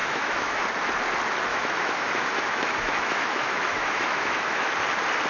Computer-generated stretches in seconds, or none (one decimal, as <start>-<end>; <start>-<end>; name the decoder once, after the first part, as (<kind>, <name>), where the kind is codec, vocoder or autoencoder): 0.0-0.6 (autoencoder, DAC-VAE); 1.5-4.7